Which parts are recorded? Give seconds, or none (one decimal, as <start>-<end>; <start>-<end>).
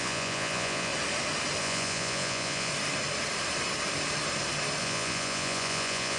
0.9-1.6; 2.7-4.8